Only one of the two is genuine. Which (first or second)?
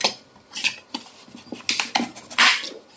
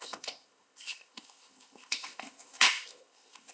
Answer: first